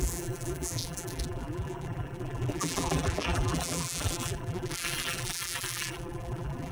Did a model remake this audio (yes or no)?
yes